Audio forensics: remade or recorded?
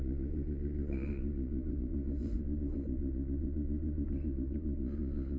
remade